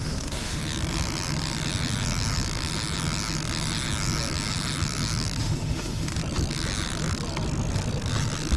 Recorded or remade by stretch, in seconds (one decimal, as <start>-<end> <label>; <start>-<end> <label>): 0.0-0.6 remade; 0.6-5.4 recorded; 5.4-6.2 remade; 6.2-8.6 recorded